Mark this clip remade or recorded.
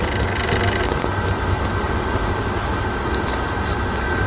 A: recorded